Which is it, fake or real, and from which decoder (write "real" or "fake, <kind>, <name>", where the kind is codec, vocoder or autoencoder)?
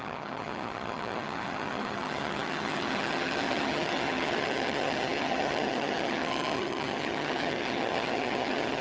fake, vocoder, HiFi-GAN